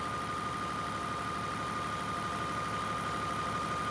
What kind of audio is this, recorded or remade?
recorded